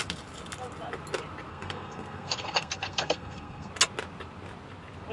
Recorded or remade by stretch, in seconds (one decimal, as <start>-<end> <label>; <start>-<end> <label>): 0.0-1.5 recorded; 1.5-3.7 remade; 3.7-5.1 recorded